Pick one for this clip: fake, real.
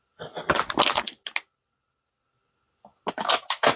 real